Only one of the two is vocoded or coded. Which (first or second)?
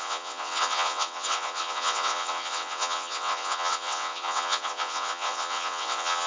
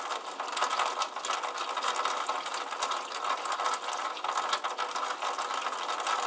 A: first